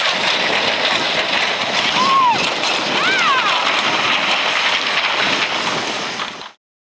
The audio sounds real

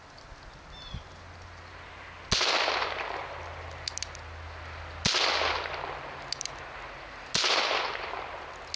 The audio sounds real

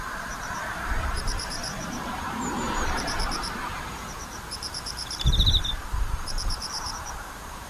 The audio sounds fake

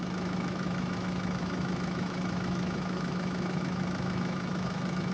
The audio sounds fake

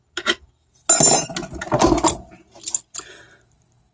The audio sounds real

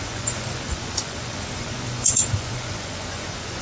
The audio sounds fake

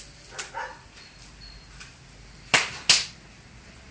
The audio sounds real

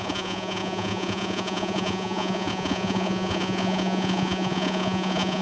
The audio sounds fake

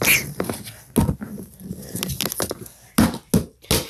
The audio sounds real